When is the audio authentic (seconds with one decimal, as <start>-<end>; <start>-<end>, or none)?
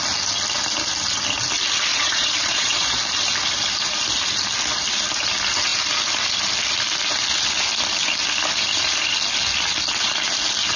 0.0-1.9; 3.0-10.8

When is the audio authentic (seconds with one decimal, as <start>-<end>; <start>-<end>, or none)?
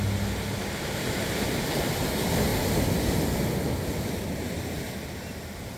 0.0-5.8